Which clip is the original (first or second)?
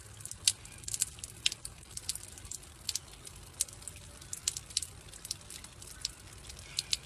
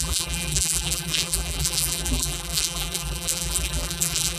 first